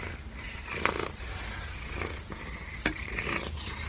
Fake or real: fake